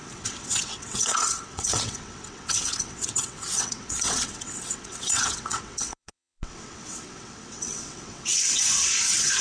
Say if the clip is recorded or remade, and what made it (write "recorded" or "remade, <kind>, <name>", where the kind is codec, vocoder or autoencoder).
remade, vocoder, WaveNeXt